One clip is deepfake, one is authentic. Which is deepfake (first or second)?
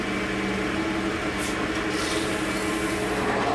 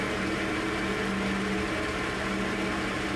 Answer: second